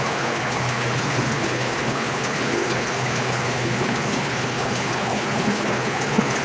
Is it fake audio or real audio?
fake